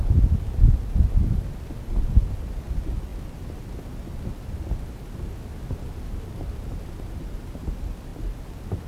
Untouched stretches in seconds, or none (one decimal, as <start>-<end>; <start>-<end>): 0.0-8.9